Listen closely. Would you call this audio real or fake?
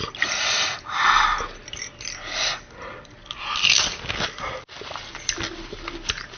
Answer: real